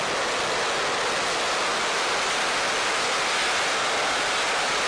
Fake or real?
real